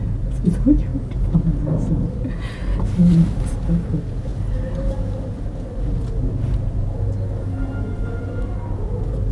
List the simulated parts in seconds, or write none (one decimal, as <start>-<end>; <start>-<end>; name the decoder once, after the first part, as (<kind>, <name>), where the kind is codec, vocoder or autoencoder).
none